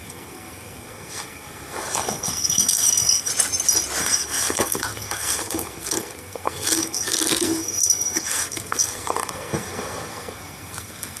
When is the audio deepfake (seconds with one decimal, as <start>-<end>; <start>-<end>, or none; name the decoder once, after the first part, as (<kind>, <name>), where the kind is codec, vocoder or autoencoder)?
0.0-3.3 (codec, SNAC); 4.0-11.2